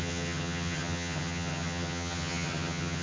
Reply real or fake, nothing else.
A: fake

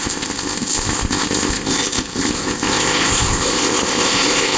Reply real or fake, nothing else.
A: fake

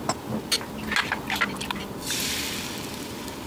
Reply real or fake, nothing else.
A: real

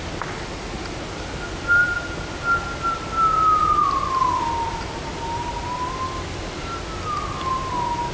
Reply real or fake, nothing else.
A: real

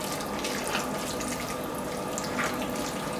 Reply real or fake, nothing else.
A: real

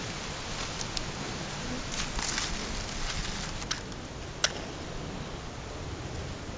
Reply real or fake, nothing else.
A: real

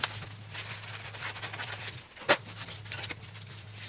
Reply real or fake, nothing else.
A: real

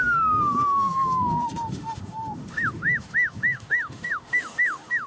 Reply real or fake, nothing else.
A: fake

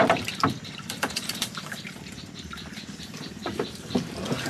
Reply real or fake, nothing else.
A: fake